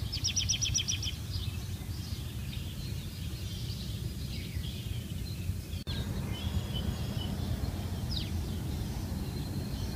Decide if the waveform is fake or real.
real